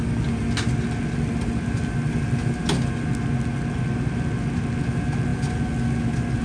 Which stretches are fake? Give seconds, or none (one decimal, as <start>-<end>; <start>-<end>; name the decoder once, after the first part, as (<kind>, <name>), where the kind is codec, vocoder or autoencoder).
none